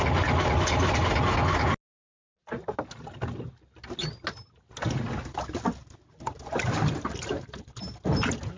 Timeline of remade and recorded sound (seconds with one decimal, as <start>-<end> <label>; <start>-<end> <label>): 0.0-8.6 recorded